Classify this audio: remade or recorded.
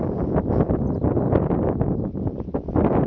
remade